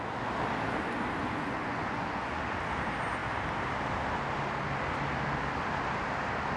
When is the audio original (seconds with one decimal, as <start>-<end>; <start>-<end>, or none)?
0.0-1.2; 2.4-6.6